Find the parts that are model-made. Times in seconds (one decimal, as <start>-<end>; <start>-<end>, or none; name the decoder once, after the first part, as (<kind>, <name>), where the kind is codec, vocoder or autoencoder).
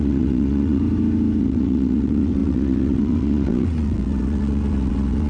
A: 0.0-0.8 (vocoder, WaveNeXt); 1.4-5.3